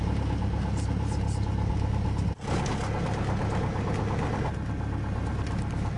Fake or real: real